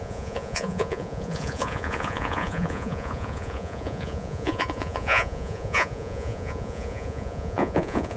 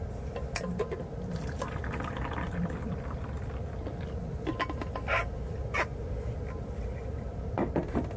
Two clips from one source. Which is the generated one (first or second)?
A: first